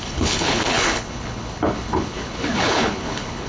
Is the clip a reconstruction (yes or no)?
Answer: yes